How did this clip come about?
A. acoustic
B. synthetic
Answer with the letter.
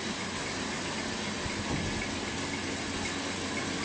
A